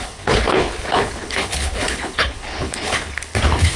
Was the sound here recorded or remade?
remade